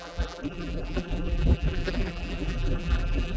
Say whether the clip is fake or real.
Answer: fake